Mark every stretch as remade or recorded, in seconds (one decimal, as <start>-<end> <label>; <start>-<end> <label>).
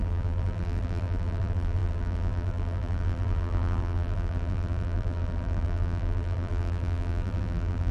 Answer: 0.0-7.9 remade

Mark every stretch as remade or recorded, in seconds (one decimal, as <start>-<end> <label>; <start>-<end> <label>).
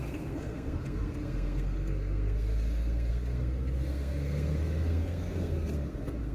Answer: 0.0-6.3 remade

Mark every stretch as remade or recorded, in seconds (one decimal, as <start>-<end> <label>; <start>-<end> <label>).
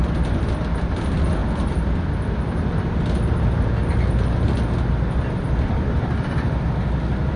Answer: 0.0-0.6 remade; 0.6-1.4 recorded; 1.4-3.4 remade; 3.4-7.4 recorded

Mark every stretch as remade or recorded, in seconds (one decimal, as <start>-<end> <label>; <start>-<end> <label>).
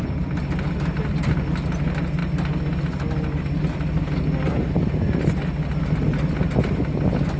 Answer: 0.0-7.4 recorded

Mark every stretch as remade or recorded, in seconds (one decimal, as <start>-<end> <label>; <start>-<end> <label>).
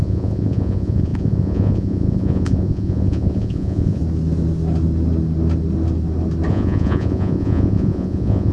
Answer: 0.0-4.0 remade; 4.0-6.5 recorded; 6.5-8.5 remade